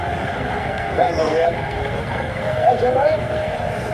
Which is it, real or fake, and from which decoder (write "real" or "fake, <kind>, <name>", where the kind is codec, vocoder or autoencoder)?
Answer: fake, codec, SNAC